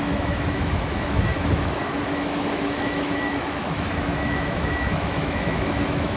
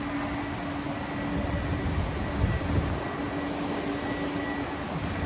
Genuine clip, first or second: second